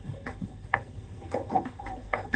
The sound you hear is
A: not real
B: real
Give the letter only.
A